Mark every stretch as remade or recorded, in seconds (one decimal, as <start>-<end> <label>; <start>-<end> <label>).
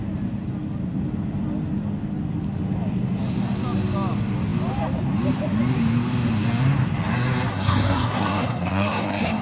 0.0-7.5 recorded; 7.5-9.4 remade